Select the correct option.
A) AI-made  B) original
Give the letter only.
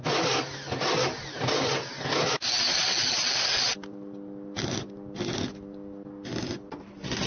B